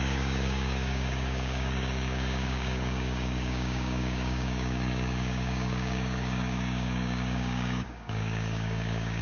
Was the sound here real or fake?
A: fake